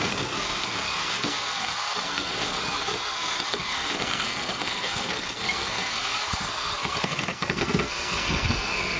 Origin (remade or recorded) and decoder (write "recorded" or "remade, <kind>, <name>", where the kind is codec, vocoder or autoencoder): remade, codec, SNAC